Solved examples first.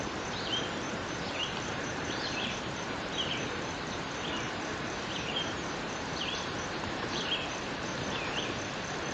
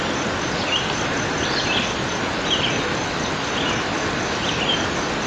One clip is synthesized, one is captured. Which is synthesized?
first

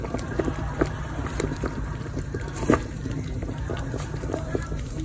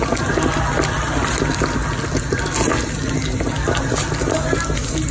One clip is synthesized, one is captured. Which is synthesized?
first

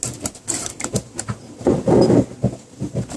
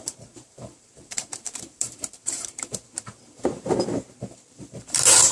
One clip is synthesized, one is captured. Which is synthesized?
second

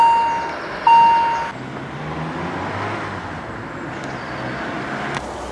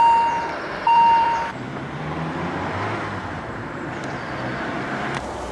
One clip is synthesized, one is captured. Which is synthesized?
second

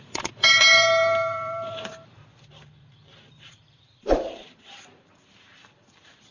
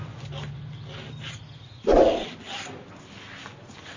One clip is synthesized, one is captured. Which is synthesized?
first